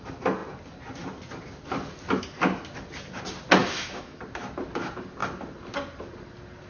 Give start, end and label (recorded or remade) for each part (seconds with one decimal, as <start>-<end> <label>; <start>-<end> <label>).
0.0-3.6 recorded; 3.6-4.2 remade; 4.2-6.7 recorded